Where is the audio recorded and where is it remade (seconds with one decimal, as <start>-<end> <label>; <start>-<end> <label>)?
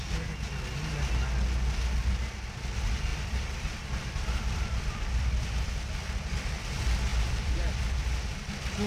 0.0-3.1 recorded; 3.1-6.6 remade; 6.6-7.1 recorded; 7.1-8.5 remade; 8.5-8.9 recorded